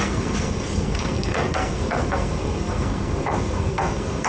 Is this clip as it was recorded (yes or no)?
no